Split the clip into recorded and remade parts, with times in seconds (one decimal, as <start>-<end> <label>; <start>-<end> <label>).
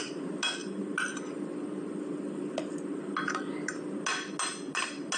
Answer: 0.0-5.2 recorded